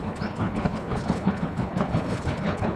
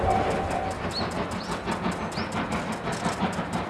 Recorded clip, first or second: second